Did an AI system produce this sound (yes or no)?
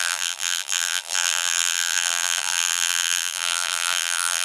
yes